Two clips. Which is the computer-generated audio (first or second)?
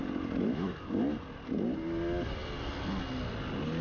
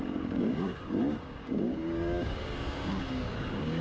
second